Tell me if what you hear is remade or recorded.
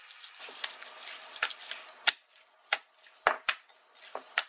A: recorded